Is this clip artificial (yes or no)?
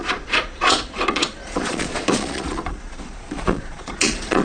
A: yes